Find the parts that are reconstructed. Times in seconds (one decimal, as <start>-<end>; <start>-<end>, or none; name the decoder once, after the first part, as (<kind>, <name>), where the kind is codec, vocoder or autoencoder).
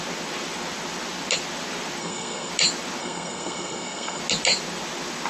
2.0-2.5 (codec, SNAC); 3.0-4.2